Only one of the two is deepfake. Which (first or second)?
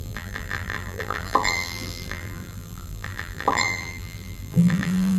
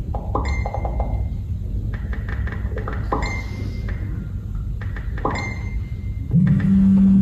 first